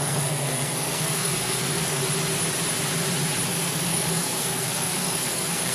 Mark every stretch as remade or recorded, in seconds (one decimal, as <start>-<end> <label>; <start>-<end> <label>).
0.0-2.0 remade; 2.0-3.5 recorded; 3.5-5.7 remade